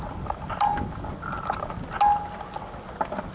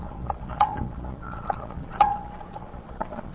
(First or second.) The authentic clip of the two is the first